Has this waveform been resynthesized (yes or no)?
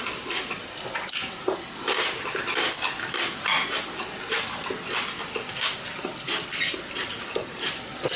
no